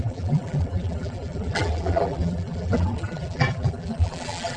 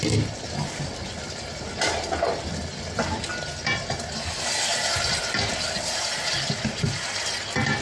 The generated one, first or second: first